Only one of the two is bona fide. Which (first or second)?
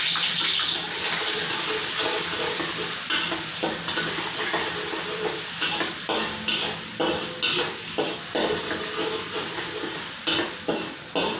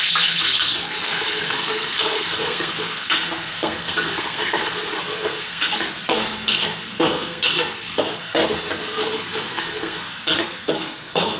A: first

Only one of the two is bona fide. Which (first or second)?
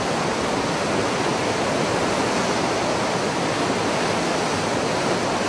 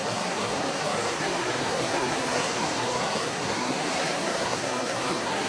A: first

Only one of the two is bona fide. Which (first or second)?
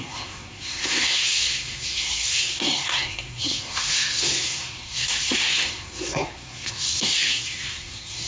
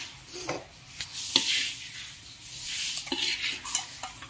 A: second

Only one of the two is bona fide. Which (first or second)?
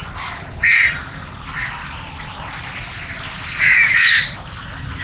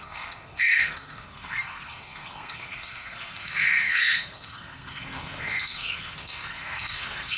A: first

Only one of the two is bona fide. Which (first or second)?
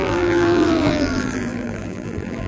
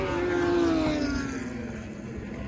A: second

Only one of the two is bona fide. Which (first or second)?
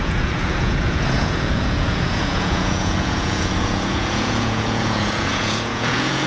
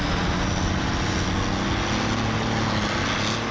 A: second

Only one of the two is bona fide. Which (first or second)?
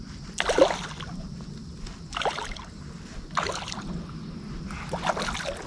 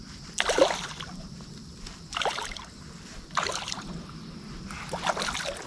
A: first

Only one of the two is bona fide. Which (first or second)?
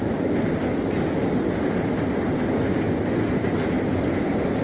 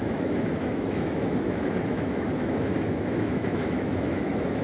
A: first